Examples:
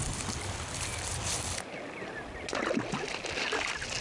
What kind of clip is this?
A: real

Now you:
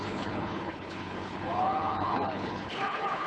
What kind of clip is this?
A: fake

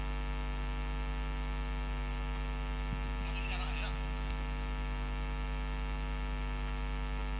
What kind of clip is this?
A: real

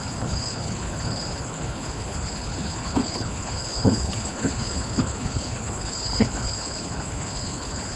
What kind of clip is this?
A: fake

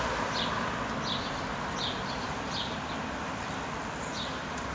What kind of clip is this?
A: real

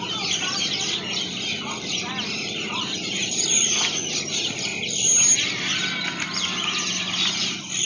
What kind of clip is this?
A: real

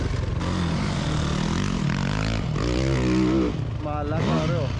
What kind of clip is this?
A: real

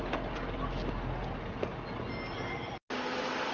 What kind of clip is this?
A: real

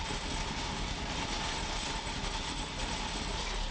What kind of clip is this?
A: real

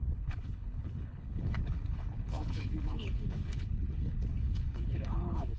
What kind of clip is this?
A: fake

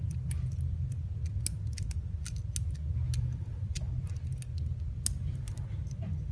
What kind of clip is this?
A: real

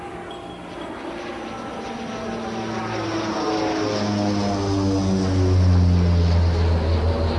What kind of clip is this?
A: real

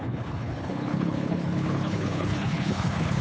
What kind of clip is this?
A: fake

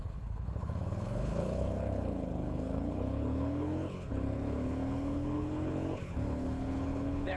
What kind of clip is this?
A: fake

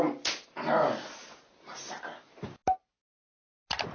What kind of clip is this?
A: real